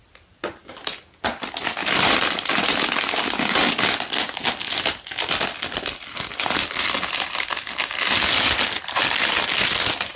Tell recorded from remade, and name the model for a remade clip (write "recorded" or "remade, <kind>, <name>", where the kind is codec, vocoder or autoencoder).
recorded